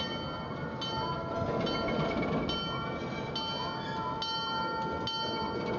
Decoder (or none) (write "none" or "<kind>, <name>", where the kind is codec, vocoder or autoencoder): none